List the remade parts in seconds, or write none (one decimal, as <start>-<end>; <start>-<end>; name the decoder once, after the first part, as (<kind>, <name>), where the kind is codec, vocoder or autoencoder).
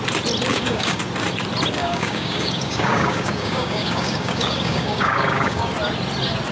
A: 0.5-1.0 (codec, DAC); 1.8-5.7